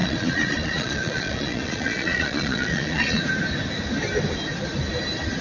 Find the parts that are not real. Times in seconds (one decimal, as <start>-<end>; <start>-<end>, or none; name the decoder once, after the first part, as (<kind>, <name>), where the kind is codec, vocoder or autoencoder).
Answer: 0.0-3.2 (vocoder, Vocos)